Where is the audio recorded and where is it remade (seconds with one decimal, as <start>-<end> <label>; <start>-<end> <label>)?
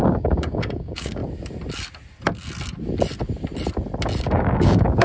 0.0-1.2 remade; 1.2-4.2 recorded; 4.2-5.0 remade